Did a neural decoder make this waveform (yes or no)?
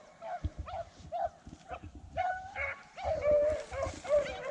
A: no